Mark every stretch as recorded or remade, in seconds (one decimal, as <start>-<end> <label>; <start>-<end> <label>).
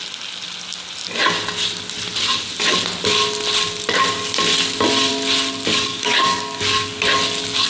0.0-5.7 recorded; 5.7-7.0 remade; 7.0-7.7 recorded